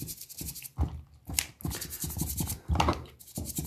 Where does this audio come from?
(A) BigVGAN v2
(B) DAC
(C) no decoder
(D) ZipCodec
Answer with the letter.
C